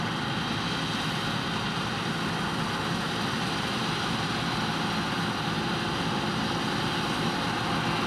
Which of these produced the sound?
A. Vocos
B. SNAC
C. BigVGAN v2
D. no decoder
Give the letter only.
D